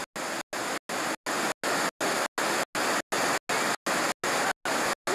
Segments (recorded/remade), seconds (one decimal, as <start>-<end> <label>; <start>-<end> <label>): 0.0-5.1 recorded